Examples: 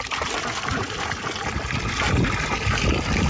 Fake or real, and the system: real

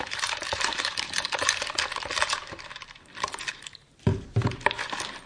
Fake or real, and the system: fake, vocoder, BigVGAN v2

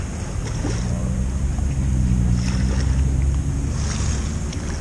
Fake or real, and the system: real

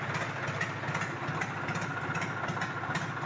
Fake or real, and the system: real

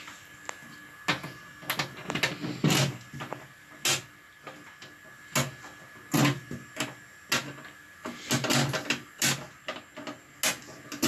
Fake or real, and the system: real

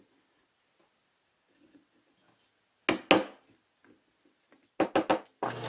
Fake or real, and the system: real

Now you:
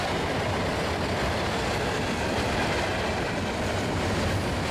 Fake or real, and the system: real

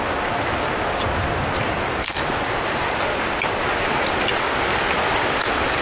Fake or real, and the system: real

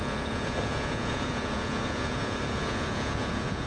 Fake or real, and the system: fake, vocoder, Vocos